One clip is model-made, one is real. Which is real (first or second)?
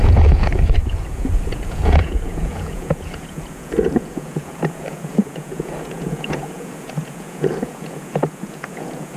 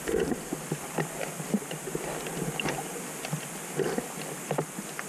second